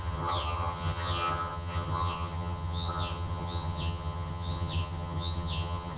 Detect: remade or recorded remade